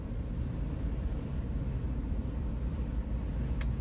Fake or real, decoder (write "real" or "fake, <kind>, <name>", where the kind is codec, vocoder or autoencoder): real